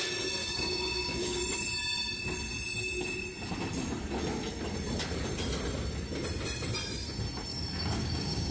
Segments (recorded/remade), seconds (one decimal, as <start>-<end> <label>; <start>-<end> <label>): 0.0-0.4 recorded; 0.4-1.4 remade; 1.4-7.5 recorded; 7.5-8.5 remade